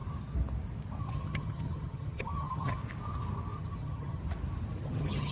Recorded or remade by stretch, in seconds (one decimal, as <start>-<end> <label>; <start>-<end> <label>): 0.0-1.0 recorded; 1.0-2.8 remade; 2.8-3.6 recorded; 3.6-4.2 remade; 4.2-4.8 recorded; 4.8-5.3 remade